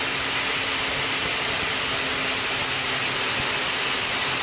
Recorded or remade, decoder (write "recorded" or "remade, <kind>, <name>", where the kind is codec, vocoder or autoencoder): recorded